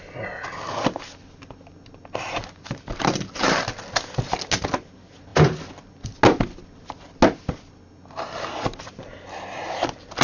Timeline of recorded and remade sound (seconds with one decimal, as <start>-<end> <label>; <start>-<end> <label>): 0.0-10.2 recorded